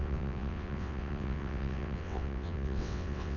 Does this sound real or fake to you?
fake